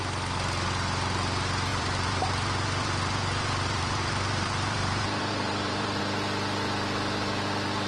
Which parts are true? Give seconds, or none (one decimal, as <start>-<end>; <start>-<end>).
0.0-1.7; 6.0-7.9